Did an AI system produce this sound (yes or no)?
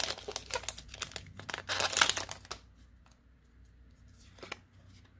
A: no